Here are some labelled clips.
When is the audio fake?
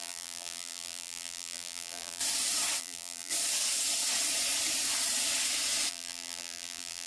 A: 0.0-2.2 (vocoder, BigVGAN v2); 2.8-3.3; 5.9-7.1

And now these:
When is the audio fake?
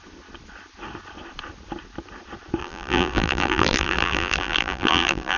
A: 2.6-5.4 (vocoder, BigVGAN v2)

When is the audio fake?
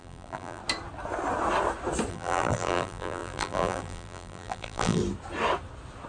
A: 0.0-0.6 (vocoder, BigVGAN v2); 2.1-5.0